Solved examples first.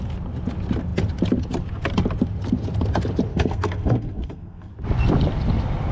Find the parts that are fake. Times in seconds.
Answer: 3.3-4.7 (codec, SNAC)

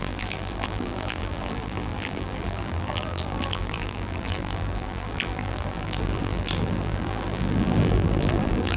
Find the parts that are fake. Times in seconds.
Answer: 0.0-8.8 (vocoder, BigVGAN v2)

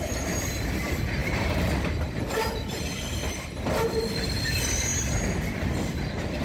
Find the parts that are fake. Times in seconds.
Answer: 1.2-3.3 (vocoder, BigVGAN v2)

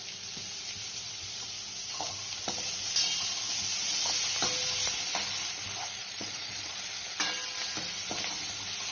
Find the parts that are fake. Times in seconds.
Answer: 6.0-6.8 (vocoder, Vocos)